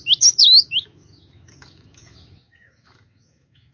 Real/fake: fake